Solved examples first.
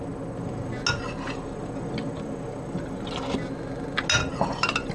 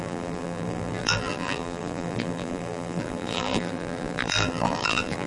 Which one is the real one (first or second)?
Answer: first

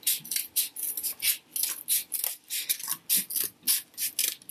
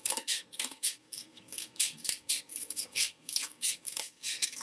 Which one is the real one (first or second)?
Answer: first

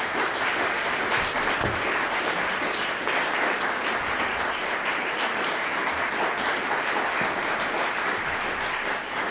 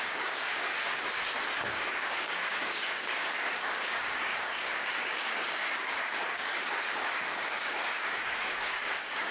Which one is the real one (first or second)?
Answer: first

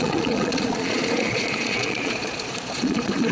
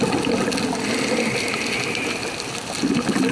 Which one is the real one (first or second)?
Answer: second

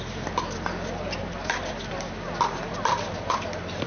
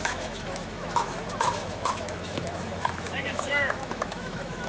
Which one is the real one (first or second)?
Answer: first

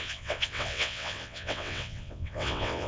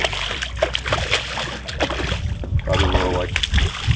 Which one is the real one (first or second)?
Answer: second